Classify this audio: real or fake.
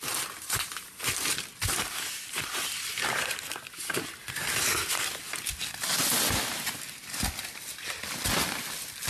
real